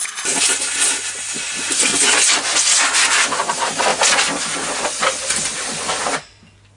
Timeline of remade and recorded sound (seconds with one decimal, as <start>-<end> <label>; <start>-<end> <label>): 0.0-1.9 recorded; 1.9-2.6 remade; 2.6-6.8 recorded